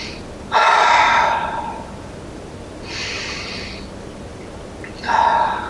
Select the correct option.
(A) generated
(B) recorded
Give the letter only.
B